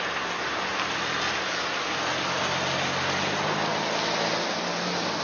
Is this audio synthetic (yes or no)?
no